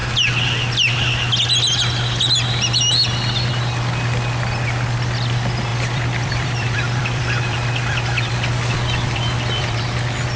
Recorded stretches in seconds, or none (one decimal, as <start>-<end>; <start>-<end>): 0.0-5.7; 9.8-10.4